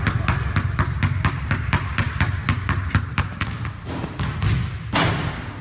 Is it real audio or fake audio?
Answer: real